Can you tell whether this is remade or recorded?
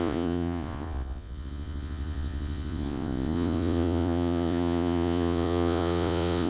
remade